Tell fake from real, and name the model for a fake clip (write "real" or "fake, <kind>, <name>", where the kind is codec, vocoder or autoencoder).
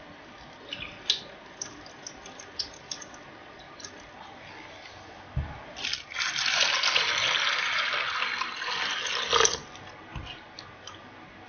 real